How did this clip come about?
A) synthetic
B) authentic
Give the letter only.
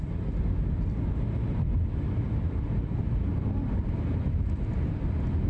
B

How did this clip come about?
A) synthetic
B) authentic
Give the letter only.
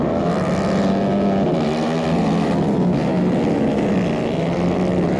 B